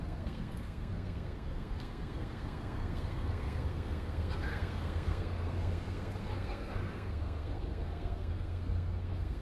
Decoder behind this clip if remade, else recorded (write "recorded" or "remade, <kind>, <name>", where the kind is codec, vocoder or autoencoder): remade, codec, SNAC